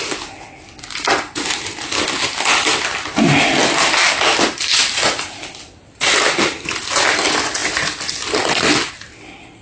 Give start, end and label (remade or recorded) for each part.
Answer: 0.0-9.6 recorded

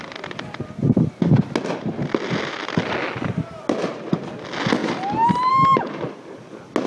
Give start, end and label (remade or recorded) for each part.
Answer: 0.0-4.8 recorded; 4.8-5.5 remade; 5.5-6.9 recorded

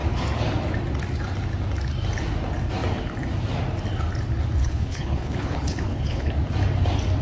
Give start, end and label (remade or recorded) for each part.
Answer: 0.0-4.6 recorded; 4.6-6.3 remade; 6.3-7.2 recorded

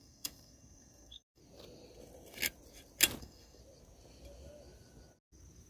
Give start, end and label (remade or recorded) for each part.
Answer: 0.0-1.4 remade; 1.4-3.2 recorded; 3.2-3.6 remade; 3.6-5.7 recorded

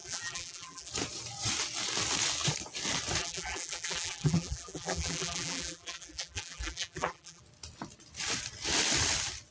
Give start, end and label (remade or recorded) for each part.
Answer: 0.0-0.9 remade; 0.9-3.2 recorded; 3.2-7.4 remade; 7.4-9.5 recorded

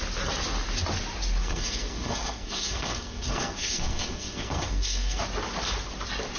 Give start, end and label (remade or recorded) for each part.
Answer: 0.0-1.4 recorded; 1.4-5.2 remade; 5.2-6.4 recorded

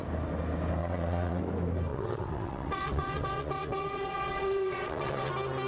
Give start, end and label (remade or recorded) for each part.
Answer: 0.0-0.8 recorded; 0.8-1.4 remade; 1.4-1.9 recorded; 1.9-5.3 remade; 5.3-5.7 recorded

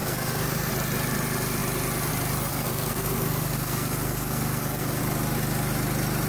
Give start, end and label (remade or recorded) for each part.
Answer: 0.0-0.7 remade; 0.7-2.5 recorded; 2.5-5.0 remade; 5.0-6.3 recorded